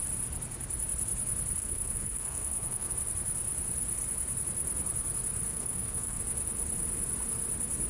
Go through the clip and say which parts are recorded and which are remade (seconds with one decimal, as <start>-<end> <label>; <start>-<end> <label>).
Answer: 0.0-1.6 recorded; 1.6-2.9 remade; 2.9-5.5 recorded; 5.5-6.2 remade; 6.2-7.9 recorded